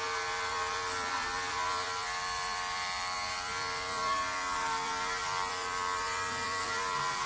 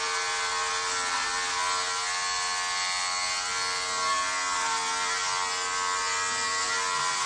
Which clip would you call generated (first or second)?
first